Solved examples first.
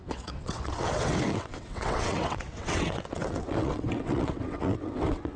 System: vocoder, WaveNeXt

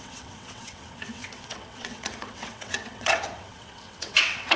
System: vocoder, WaveNeXt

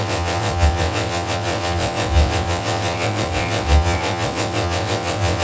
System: vocoder, WaveNeXt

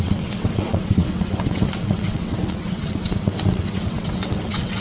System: vocoder, WaveNeXt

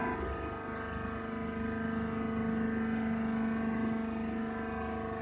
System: none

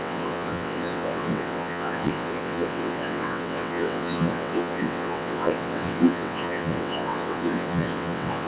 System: vocoder, WaveNeXt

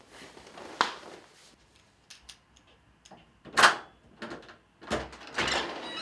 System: none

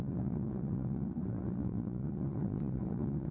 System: vocoder, WaveNeXt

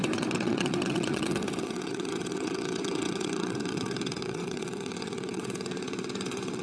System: vocoder, WaveNeXt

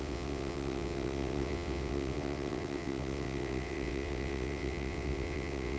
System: vocoder, WaveNeXt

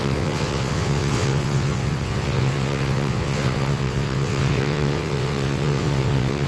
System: vocoder, WaveNeXt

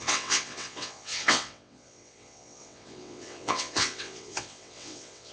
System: vocoder, WaveNeXt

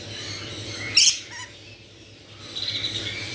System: none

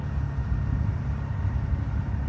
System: none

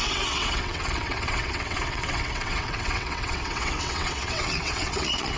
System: vocoder, WaveNeXt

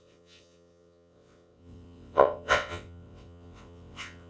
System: vocoder, WaveNeXt